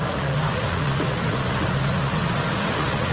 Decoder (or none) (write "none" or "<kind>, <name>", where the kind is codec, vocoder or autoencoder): vocoder, Vocos